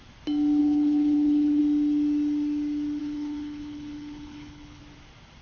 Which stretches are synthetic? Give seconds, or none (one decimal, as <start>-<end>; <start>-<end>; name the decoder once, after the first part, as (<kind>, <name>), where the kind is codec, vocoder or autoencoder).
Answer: 0.6-1.6 (codec, HILCodec); 3.0-4.8